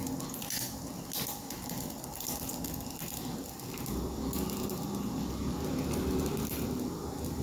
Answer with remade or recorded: recorded